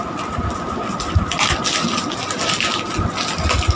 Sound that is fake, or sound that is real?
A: real